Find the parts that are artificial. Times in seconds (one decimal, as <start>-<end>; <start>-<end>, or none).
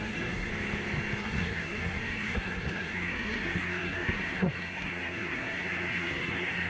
0.0-0.5; 1.2-6.7